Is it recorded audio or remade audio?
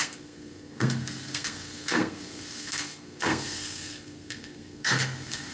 remade